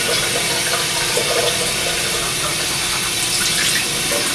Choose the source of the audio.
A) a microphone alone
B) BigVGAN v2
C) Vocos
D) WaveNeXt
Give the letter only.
B